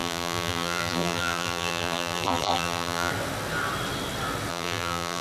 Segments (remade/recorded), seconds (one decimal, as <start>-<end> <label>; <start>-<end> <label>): 0.0-3.1 remade; 3.1-4.5 recorded; 4.5-5.2 remade